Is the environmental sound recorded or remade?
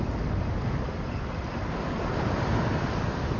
recorded